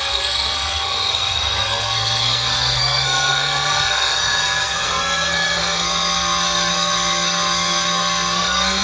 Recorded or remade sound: remade